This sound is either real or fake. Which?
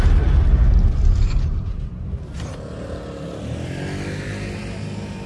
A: real